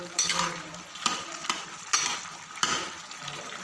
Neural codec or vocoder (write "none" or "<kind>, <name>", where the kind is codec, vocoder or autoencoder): none